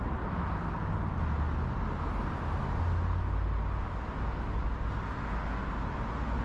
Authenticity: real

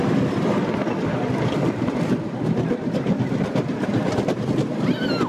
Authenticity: real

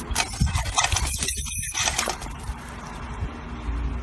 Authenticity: real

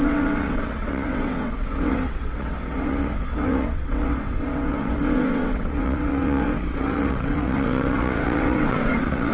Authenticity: fake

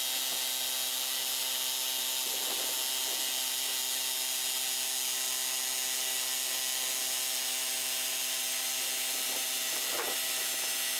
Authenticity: real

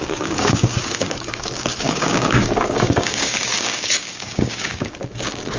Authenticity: fake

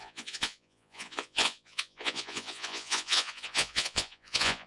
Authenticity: fake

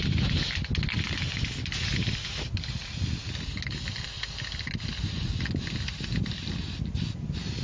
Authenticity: real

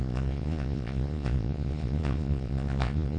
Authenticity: fake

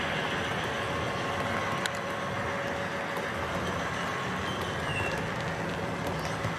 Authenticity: real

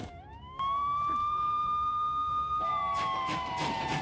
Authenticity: fake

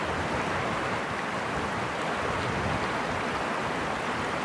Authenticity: real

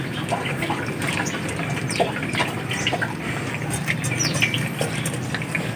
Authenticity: real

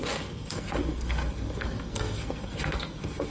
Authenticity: fake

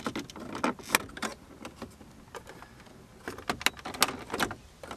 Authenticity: real